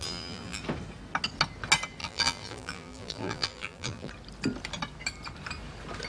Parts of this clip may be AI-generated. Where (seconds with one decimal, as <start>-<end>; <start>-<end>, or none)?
0.0-0.6; 2.0-4.1